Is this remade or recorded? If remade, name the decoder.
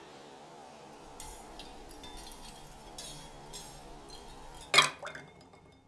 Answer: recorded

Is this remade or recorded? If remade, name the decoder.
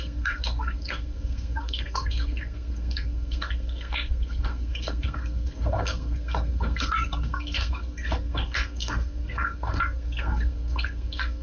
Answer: remade, codec, SNAC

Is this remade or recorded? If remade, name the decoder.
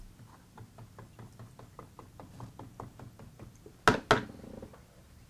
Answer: recorded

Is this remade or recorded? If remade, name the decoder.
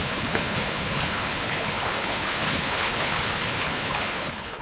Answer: remade, codec, HILCodec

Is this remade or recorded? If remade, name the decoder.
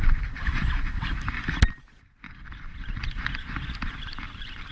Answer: recorded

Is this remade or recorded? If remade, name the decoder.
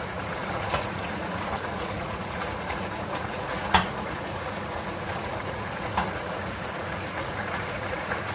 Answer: remade, vocoder, Vocos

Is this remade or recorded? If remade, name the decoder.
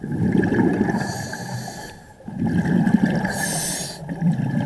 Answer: recorded